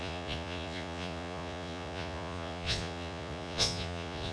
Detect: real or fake fake